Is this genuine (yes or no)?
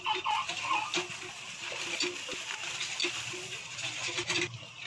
yes